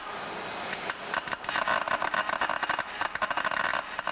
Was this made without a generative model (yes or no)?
yes